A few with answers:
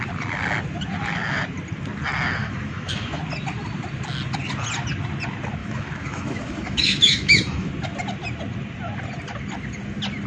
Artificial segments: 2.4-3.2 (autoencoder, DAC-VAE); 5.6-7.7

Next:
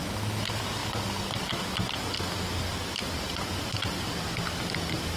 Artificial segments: none

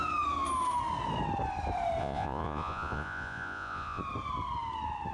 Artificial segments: 2.0-4.0 (vocoder, Vocos)

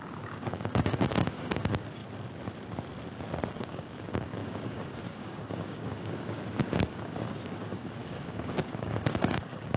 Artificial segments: 0.0-2.0 (codec, DAC); 3.5-9.8

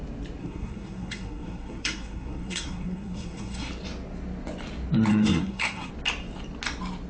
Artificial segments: 0.4-3.7 (codec, SNAC); 5.1-5.9

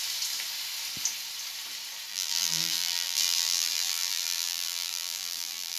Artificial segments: 2.1-5.8 (vocoder, BigVGAN v2)